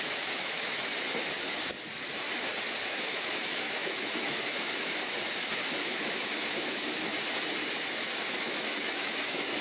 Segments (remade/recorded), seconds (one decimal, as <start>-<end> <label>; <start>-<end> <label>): 0.0-0.9 remade; 0.9-2.9 recorded; 2.9-7.1 remade; 7.1-8.4 recorded; 8.4-9.6 remade